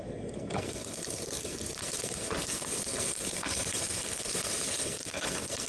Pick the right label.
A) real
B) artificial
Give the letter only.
B